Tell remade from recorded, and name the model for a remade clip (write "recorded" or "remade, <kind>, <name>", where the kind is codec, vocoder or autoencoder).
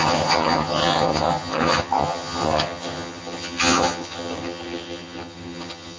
remade, vocoder, HiFi-GAN